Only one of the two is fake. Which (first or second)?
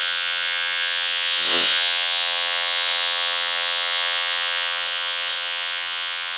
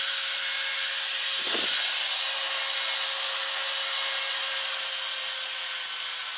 first